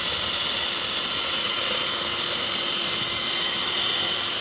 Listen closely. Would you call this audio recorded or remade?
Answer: recorded